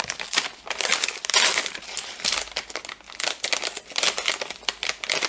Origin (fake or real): real